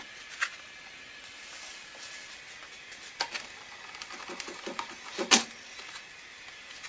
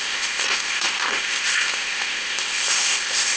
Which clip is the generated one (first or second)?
second